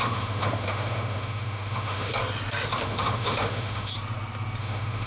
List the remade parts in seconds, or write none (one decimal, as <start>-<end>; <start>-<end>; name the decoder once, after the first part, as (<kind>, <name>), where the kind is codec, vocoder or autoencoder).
0.0-2.1 (autoencoder, DAC-VAE); 2.8-3.9; 4.6-5.1